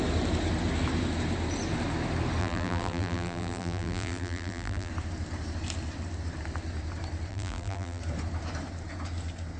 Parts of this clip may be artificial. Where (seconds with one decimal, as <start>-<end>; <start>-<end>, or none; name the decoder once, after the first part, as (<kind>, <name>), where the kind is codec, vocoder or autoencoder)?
2.4-4.9 (vocoder, BigVGAN v2); 7.3-8.0